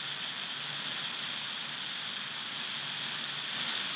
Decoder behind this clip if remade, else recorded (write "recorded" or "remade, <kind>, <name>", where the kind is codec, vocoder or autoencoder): recorded